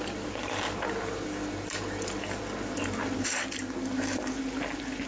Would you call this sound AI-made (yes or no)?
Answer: no